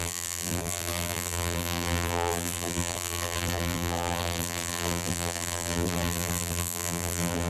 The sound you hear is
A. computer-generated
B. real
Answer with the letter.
A